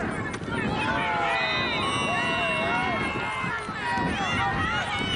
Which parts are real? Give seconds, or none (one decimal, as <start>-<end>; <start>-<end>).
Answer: 0.0-5.2